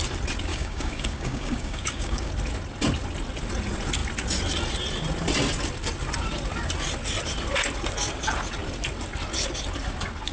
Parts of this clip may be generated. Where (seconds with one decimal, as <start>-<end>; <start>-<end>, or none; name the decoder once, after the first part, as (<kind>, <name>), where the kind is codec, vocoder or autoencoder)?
0.5-2.3 (codec, DAC)